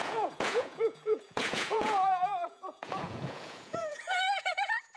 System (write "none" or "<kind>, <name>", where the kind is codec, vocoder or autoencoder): vocoder, Vocos